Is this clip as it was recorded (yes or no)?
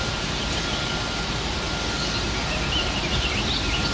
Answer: yes